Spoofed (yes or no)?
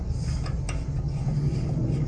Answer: no